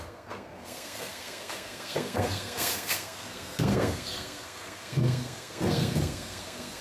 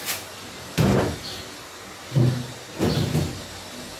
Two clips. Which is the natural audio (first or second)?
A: second